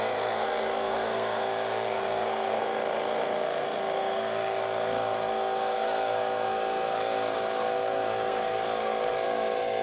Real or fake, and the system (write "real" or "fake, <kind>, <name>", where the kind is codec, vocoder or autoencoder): fake, codec, SNAC